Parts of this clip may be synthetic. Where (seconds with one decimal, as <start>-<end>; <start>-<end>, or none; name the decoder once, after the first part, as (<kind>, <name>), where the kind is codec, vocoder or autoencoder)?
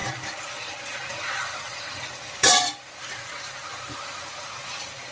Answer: 0.0-3.1 (vocoder, BigVGAN v2); 3.7-5.1